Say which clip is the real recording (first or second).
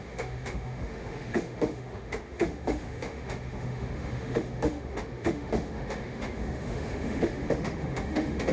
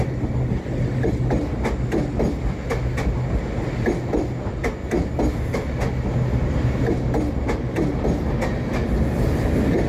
second